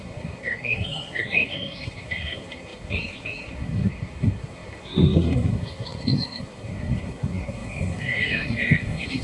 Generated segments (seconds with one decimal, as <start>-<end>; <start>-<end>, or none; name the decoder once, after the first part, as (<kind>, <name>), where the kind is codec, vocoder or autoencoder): 0.0-9.2 (codec, SNAC)